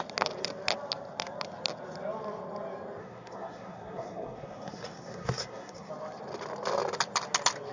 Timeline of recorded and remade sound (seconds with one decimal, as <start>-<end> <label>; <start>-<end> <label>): 0.0-3.0 recorded; 3.0-5.9 remade; 5.9-7.7 recorded